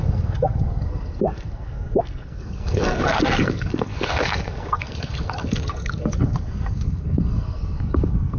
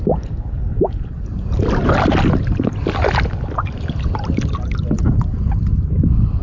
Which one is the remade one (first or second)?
first